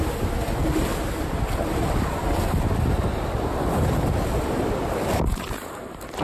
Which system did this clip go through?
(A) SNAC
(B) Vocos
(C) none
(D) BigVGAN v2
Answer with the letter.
C